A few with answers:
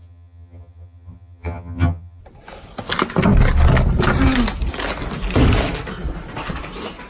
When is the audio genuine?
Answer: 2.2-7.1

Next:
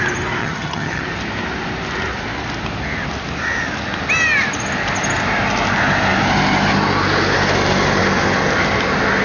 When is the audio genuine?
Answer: 0.0-0.4; 1.0-9.2